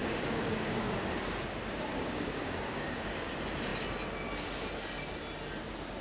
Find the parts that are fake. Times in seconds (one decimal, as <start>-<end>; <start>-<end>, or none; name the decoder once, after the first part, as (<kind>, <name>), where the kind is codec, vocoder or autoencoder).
0.0-0.9 (codec, DAC); 1.9-3.3